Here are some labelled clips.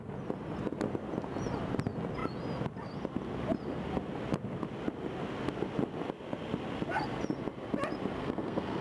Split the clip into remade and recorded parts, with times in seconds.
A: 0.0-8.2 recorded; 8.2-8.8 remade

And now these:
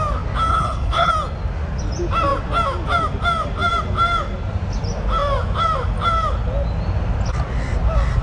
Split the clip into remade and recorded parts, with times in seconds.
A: 0.0-0.5 recorded; 0.5-1.1 remade; 1.1-8.2 recorded

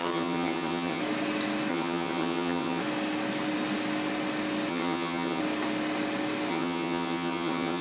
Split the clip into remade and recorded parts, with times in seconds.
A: 0.0-1.0 remade; 1.0-1.7 recorded; 1.7-2.8 remade; 2.8-4.7 recorded; 4.7-5.4 remade; 5.4-6.5 recorded; 6.5-7.8 remade

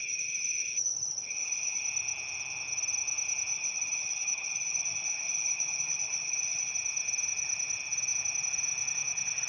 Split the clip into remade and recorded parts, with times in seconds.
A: 0.0-1.8 remade; 1.8-3.5 recorded; 3.5-6.7 remade; 6.7-9.5 recorded

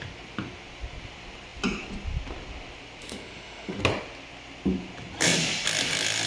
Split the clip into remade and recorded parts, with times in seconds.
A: 0.0-3.0 recorded; 3.0-3.8 remade; 3.8-6.3 recorded

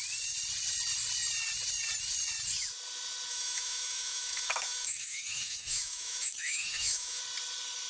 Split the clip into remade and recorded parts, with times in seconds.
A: 0.0-3.3 recorded; 3.3-7.2 remade; 7.2-7.9 recorded

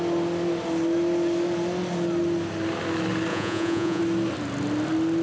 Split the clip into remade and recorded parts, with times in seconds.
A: 0.0-3.3 recorded; 3.3-4.0 remade; 4.0-5.2 recorded

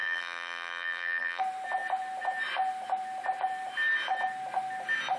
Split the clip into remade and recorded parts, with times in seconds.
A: 0.0-1.4 remade; 1.4-5.2 recorded